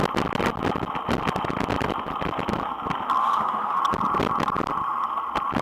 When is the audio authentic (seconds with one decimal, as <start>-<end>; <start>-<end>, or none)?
0.0-3.2; 3.8-5.6